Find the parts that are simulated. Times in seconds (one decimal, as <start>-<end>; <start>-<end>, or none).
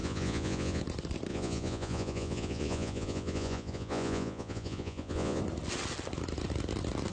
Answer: 0.0-0.8; 1.3-5.4